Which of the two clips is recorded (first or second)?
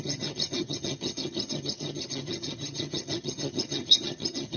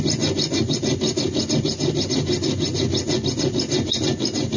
second